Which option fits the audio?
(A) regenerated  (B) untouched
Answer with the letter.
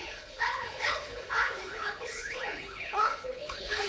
A